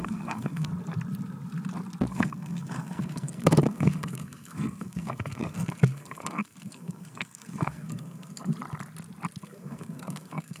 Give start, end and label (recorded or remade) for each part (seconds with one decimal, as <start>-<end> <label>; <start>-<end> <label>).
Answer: 0.0-0.7 remade; 0.7-2.1 recorded; 2.1-8.5 remade; 8.5-9.4 recorded; 9.4-10.6 remade